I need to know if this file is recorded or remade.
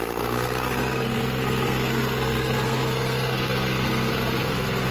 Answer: remade